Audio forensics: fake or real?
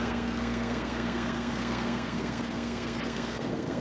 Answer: fake